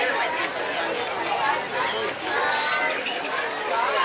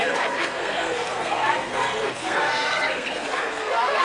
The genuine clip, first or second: first